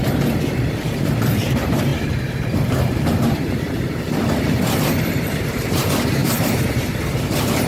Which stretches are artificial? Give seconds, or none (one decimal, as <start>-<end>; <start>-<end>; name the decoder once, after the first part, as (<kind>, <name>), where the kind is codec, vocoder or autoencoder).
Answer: 0.0-1.9 (vocoder, BigVGAN v2); 2.5-7.7